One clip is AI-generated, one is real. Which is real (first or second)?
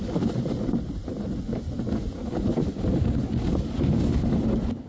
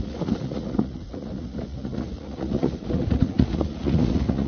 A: first